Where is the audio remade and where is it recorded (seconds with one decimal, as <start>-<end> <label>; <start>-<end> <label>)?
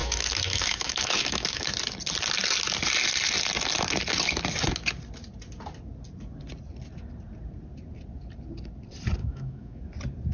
0.0-1.7 remade; 1.7-9.2 recorded; 9.2-9.8 remade; 9.8-10.3 recorded